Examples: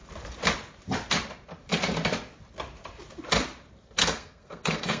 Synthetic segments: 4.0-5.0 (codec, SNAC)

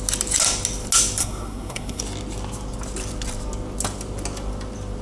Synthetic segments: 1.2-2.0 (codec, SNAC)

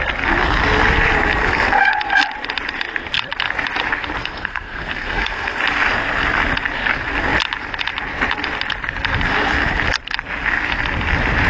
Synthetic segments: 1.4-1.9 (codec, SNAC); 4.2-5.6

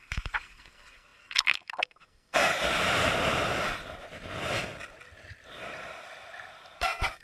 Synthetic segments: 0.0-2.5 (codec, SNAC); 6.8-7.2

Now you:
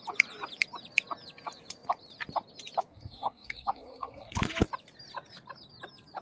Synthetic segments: 2.9-4.3 (codec, SNAC)